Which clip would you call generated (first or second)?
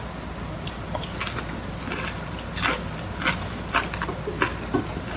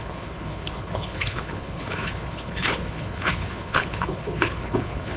second